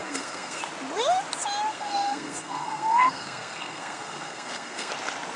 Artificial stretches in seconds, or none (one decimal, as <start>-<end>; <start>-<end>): 0.0-0.6; 1.7-4.9